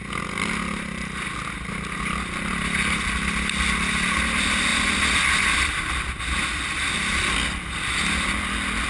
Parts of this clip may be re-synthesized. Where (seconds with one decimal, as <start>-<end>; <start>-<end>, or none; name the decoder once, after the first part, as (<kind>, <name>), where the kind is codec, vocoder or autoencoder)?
none